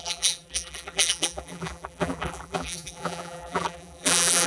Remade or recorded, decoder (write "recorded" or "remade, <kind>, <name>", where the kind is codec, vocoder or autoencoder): remade, vocoder, BigVGAN v2